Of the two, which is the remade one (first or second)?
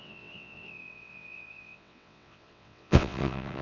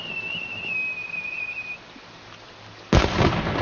first